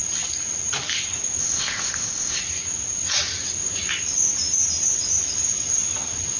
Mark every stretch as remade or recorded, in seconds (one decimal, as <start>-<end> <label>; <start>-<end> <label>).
0.0-1.4 recorded; 1.4-2.4 remade; 2.4-6.4 recorded